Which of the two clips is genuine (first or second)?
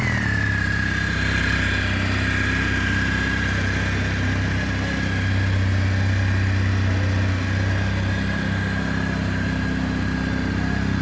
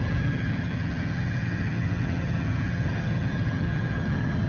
first